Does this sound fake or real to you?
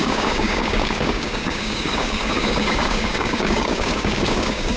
fake